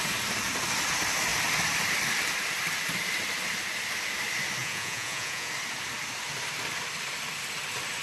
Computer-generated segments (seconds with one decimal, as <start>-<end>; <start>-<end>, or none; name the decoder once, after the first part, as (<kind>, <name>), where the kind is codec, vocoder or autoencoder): 4.6-5.5 (vocoder, Vocos)